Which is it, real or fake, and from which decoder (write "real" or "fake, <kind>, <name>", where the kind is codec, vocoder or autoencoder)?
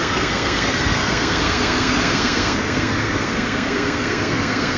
fake, codec, SNAC